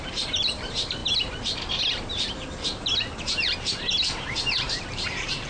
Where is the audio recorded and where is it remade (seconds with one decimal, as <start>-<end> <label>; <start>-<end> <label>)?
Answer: 0.0-1.0 remade; 1.0-4.3 recorded; 4.3-5.5 remade